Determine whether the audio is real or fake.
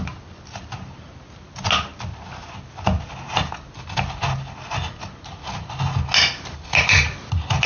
real